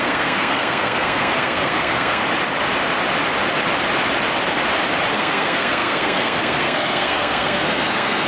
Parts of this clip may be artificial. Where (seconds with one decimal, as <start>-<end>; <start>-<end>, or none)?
0.0-2.2; 5.1-8.3